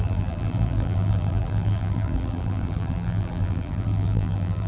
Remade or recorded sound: remade